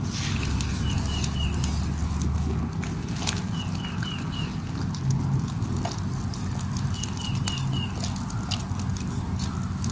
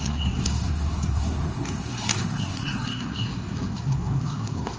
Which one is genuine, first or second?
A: first